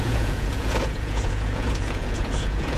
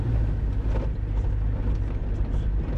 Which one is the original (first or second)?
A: second